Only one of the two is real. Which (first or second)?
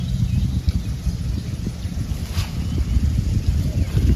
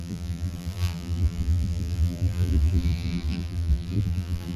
first